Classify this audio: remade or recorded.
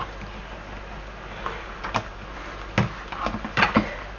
recorded